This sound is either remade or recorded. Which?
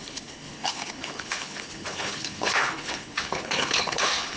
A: remade